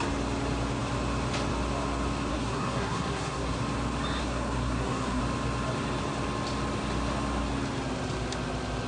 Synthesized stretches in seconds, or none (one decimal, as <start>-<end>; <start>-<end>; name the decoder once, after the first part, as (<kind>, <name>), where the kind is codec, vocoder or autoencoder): 2.3-3.6 (codec, SNAC); 4.2-5.2